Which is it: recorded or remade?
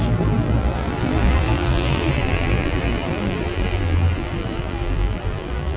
remade